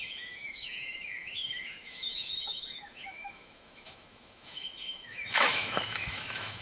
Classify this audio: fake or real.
fake